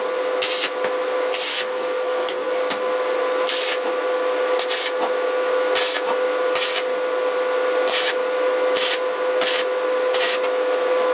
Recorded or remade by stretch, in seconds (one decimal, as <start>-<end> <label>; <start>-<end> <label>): 0.0-1.5 recorded; 1.5-2.6 remade; 2.6-11.1 recorded

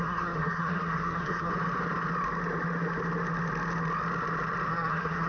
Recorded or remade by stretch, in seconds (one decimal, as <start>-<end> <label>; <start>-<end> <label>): 0.0-1.5 remade; 1.5-4.7 recorded; 4.7-5.3 remade

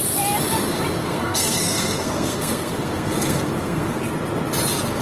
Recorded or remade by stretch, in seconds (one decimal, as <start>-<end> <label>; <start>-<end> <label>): 0.0-1.0 recorded; 1.0-4.0 remade; 4.0-5.0 recorded

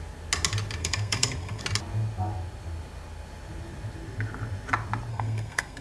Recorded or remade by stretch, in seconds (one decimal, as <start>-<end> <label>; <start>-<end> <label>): 0.0-0.8 recorded; 0.8-1.6 remade; 1.6-5.1 recorded; 5.1-5.8 remade

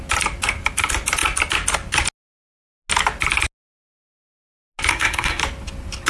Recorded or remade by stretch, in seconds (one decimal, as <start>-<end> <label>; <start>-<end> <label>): 0.0-4.9 recorded; 4.9-5.4 remade; 5.4-6.1 recorded